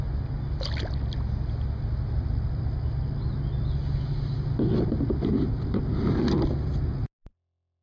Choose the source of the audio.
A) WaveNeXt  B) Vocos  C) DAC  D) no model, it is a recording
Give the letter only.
D